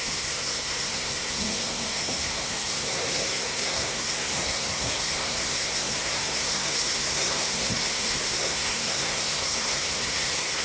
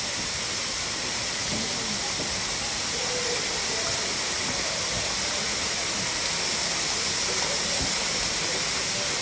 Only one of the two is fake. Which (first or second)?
first